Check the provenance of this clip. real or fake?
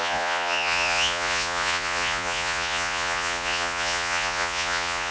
fake